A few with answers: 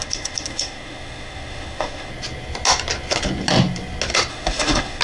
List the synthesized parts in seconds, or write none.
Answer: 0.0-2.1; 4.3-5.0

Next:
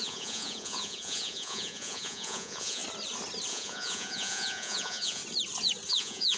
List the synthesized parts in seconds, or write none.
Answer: 0.0-2.8; 3.5-5.2; 5.9-6.4